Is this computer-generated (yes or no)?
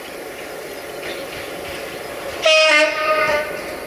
no